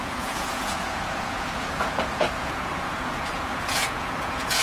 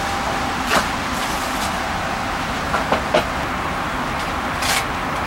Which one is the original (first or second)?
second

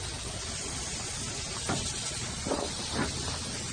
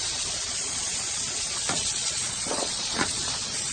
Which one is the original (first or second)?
first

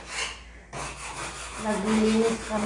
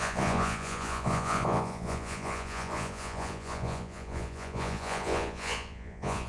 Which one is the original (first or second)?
first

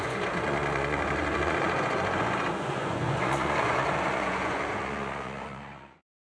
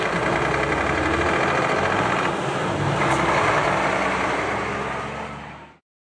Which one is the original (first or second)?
second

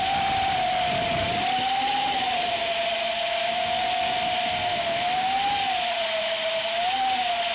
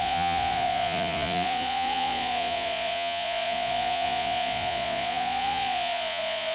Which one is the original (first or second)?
first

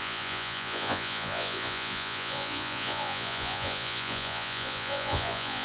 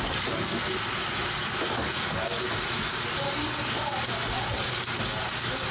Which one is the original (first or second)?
second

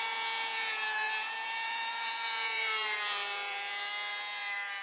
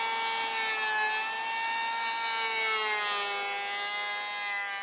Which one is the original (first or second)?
second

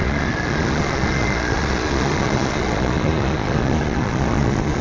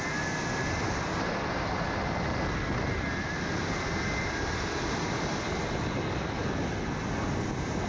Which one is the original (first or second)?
second